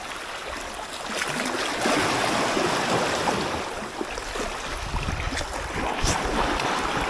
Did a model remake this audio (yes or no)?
no